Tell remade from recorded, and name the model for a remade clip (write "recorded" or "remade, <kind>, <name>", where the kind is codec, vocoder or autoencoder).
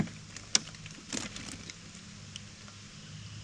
recorded